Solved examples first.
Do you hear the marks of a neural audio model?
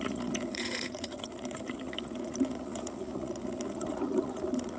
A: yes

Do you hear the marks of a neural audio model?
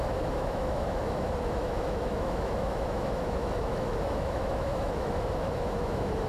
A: yes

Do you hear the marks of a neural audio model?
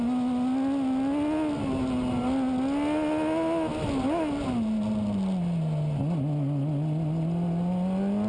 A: no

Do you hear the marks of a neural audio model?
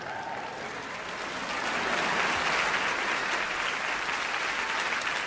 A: no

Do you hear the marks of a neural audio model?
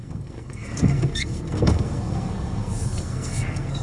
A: yes